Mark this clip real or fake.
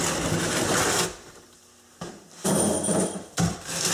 real